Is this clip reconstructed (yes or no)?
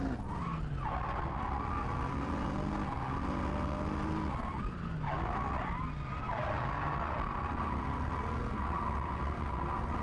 no